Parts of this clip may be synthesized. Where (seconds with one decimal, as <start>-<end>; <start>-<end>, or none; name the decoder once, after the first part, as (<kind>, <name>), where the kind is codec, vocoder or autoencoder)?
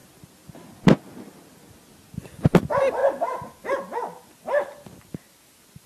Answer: none